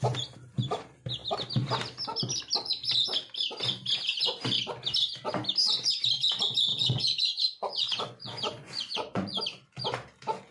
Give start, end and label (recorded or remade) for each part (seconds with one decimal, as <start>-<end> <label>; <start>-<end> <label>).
0.0-6.7 recorded; 6.7-9.4 remade; 9.4-10.5 recorded